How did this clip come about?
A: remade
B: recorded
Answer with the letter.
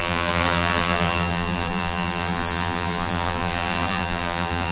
A